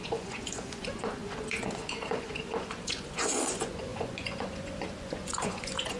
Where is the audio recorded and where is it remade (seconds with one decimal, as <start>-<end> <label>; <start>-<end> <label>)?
0.0-6.0 remade